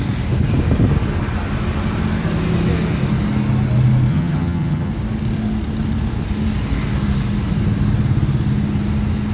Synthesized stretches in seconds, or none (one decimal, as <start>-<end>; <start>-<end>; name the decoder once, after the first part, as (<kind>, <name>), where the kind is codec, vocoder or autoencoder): 4.1-4.9 (vocoder, HiFi-GAN)